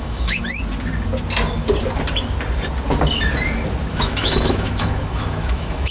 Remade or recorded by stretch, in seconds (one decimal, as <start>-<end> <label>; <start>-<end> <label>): 0.0-0.4 remade; 0.4-3.9 recorded; 3.9-5.9 remade